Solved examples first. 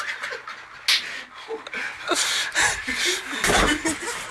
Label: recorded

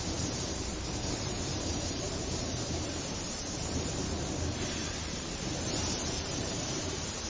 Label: remade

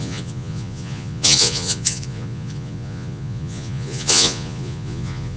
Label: remade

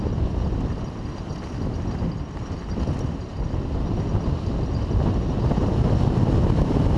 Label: recorded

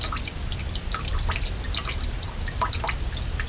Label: remade